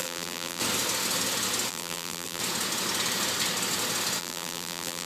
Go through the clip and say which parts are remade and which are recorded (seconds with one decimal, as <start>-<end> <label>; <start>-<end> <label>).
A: 0.0-0.6 remade; 0.6-1.7 recorded; 1.7-2.4 remade; 2.4-4.2 recorded; 4.2-5.1 remade